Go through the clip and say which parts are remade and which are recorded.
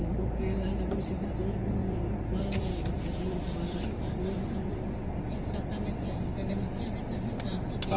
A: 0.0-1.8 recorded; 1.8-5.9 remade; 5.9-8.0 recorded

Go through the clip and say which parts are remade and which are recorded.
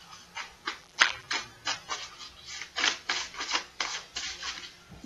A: 0.0-0.8 recorded; 0.8-1.3 remade; 1.3-5.1 recorded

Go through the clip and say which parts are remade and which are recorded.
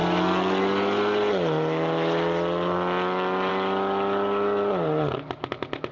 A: 0.0-5.9 recorded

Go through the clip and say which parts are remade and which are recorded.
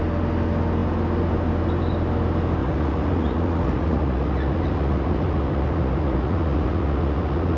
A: 0.0-2.6 recorded; 2.6-7.6 remade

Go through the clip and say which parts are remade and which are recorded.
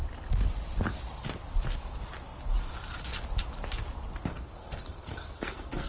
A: 0.0-4.3 recorded; 4.3-5.9 remade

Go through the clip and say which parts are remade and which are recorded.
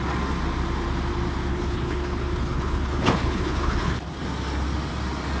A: 0.0-1.5 recorded; 1.5-4.0 remade; 4.0-5.4 recorded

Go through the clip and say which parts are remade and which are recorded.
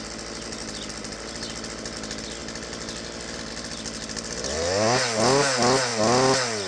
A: 0.0-6.7 recorded